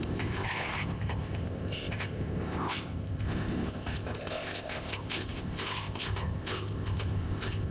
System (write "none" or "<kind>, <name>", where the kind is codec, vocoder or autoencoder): codec, ZipCodec